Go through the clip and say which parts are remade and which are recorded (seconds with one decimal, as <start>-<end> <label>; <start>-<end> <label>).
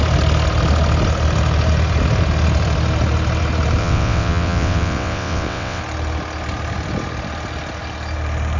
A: 0.0-3.8 recorded; 3.8-5.8 remade; 5.8-8.6 recorded